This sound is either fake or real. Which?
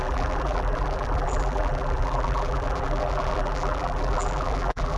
fake